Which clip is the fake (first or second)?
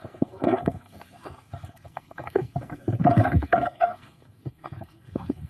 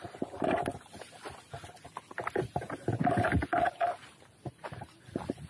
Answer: first